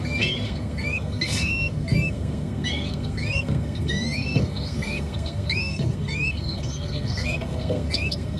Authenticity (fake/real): fake